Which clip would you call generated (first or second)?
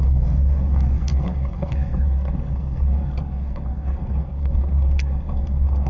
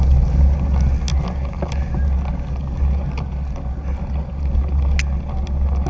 first